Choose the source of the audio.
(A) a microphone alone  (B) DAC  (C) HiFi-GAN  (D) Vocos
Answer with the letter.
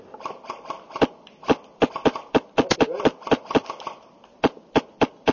A